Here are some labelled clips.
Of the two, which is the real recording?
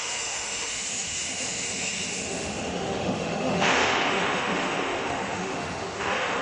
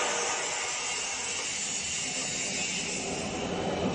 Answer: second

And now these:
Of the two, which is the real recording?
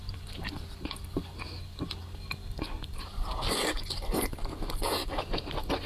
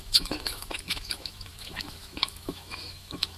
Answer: first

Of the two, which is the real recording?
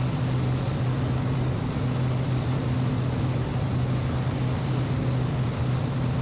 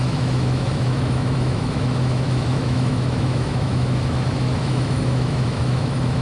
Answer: first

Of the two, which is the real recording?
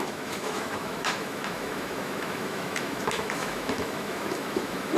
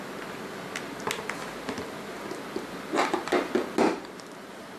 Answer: second